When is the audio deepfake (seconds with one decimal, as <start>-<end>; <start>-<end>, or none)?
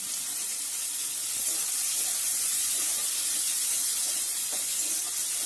2.3-3.1; 3.8-4.8